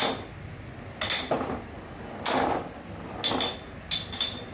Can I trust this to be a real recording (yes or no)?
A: yes